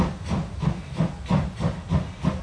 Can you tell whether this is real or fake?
real